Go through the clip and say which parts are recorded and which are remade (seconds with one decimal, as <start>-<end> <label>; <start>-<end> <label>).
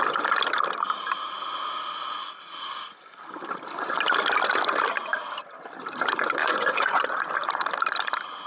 0.0-6.4 recorded; 6.4-7.0 remade; 7.0-8.5 recorded